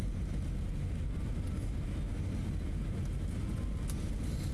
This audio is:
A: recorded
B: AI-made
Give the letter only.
A